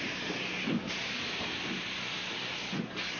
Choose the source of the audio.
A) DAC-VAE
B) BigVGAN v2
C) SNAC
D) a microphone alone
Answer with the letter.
D